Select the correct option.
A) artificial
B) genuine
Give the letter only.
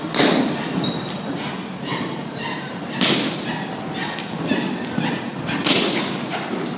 B